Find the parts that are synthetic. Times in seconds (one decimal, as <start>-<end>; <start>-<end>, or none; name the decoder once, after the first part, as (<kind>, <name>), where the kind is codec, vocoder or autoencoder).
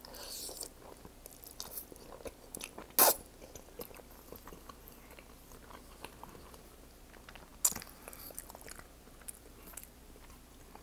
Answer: none